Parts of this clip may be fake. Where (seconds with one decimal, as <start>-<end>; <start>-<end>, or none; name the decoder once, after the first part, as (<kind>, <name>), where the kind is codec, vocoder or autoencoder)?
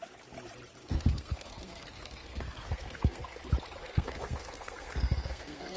0.8-3.4 (codec, SNAC); 3.8-5.8